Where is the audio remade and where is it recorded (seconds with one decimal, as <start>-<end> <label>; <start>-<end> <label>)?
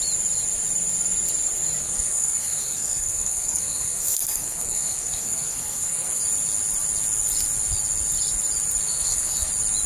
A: 0.0-1.8 recorded; 1.8-6.2 remade; 6.2-8.9 recorded; 8.9-9.5 remade; 9.5-9.9 recorded